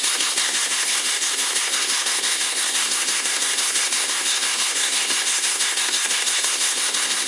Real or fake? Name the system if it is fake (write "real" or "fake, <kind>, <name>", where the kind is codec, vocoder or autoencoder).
fake, codec, SNAC